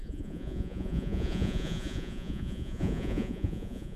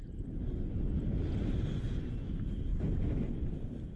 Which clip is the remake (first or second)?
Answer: first